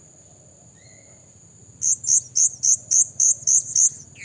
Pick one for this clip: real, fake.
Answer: fake